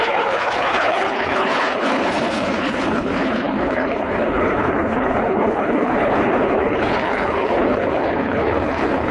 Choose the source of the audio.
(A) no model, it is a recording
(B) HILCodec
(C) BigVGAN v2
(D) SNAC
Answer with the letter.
B